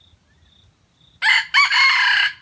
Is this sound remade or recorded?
recorded